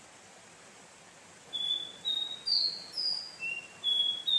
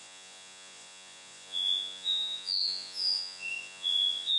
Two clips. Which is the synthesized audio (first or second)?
second